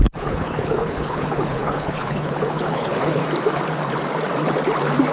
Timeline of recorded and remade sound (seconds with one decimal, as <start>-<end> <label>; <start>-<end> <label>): 0.0-3.2 remade; 3.2-5.1 recorded